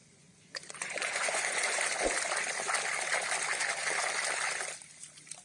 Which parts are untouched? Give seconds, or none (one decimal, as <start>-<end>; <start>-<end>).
1.8-5.4